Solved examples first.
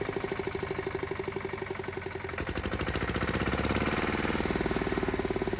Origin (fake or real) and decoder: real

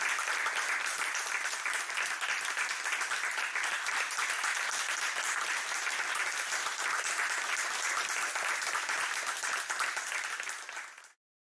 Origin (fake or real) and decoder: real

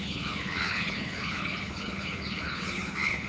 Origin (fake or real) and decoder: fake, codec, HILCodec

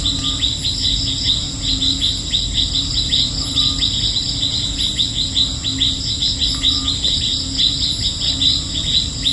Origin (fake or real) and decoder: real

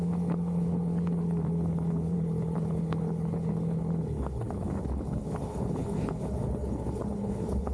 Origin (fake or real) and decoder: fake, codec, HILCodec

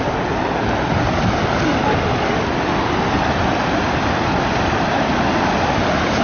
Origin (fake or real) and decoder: real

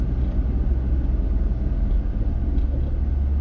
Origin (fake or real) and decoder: real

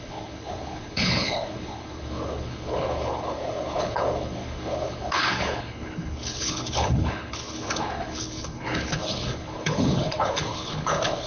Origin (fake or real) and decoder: fake, codec, HILCodec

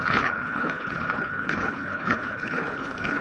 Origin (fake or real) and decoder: fake, codec, HILCodec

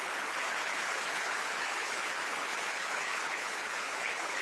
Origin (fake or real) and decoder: fake, codec, HILCodec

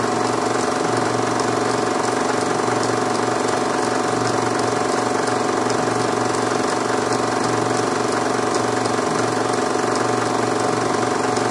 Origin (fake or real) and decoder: real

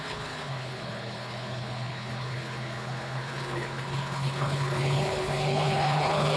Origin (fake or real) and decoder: fake, codec, HILCodec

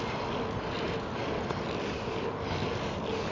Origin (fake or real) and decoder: real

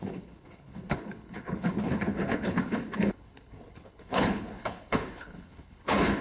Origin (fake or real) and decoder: fake, codec, HILCodec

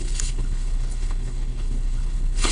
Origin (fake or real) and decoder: fake, codec, HILCodec